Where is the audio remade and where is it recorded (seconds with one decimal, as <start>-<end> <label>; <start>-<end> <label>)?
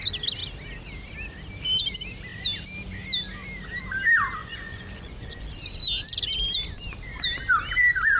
0.0-4.4 recorded; 4.4-5.5 remade; 5.5-8.2 recorded